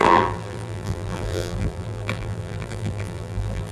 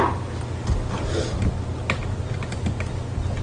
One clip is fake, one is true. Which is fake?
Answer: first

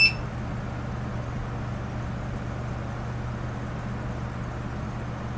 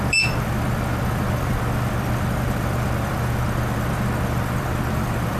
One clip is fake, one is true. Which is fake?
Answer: second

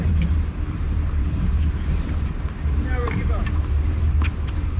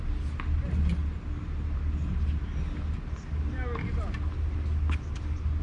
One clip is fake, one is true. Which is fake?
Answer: first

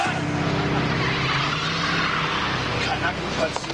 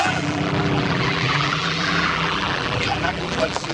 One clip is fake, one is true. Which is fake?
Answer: second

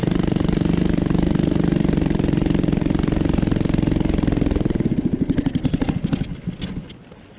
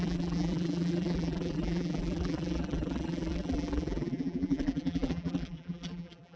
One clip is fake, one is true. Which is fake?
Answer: second